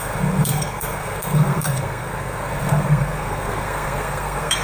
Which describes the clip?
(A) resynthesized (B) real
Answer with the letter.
A